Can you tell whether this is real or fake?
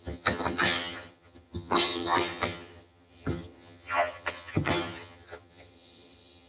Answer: fake